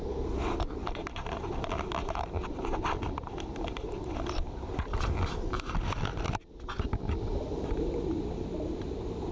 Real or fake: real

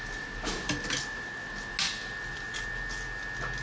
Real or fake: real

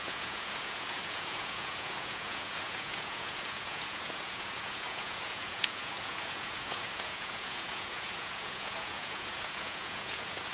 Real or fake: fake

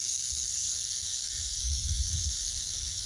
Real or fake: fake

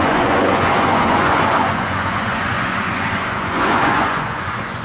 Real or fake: fake